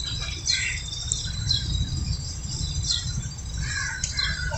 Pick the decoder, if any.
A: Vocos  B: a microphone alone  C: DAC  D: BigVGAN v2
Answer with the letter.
D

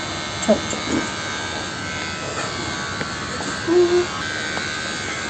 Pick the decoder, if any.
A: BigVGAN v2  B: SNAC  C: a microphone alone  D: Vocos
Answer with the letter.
C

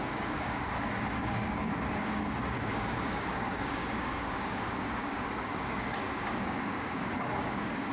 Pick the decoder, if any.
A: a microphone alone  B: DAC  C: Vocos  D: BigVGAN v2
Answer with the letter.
B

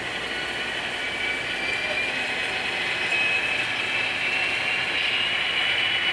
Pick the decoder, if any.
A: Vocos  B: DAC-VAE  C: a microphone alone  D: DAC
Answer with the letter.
C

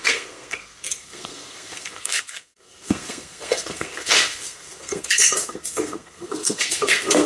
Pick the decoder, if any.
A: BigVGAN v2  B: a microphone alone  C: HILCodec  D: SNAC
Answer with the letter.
D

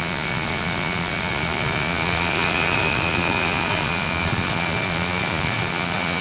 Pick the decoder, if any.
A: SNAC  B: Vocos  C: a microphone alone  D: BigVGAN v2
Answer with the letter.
B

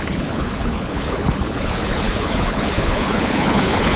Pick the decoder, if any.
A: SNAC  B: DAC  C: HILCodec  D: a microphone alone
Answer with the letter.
C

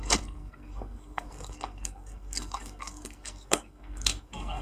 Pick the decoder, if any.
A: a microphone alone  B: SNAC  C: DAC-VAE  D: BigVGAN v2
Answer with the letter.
B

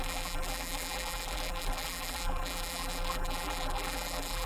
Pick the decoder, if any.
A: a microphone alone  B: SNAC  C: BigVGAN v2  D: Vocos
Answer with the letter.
C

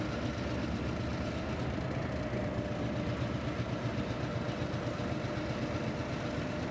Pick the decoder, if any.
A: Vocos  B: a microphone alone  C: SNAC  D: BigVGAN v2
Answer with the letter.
B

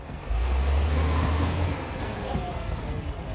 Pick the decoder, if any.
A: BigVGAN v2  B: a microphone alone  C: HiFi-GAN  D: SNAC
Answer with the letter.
D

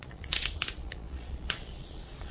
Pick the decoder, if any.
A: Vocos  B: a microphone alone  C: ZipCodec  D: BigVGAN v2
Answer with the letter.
A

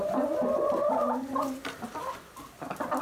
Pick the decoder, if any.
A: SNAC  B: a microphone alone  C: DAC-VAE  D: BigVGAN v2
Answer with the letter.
D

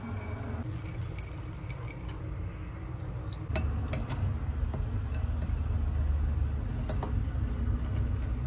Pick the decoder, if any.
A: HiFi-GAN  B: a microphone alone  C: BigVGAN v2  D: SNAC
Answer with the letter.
B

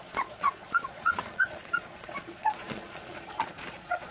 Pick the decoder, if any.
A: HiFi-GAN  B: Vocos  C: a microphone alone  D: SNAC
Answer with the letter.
B